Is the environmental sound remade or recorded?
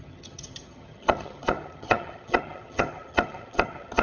remade